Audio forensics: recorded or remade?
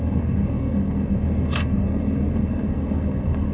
remade